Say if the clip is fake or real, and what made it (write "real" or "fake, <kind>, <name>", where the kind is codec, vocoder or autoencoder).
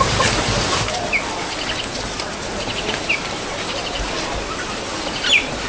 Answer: real